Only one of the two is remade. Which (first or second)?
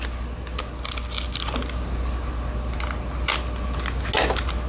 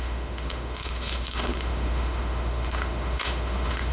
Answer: second